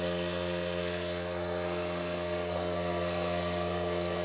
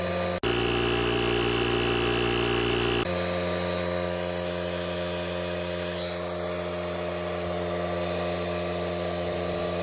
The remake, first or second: first